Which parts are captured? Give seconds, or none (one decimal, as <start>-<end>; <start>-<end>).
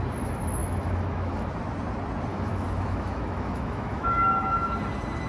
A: 0.0-0.6; 1.5-2.3; 4.7-5.3